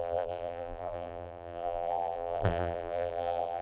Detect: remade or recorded remade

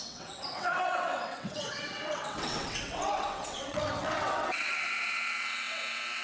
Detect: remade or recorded remade